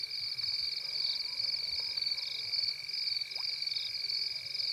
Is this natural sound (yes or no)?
yes